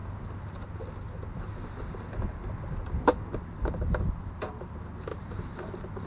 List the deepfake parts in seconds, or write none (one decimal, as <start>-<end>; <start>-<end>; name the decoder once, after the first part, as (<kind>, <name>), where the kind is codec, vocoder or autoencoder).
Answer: none